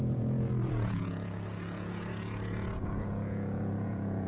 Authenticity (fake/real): fake